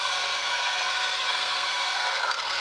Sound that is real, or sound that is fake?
fake